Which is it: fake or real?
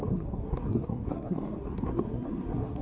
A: fake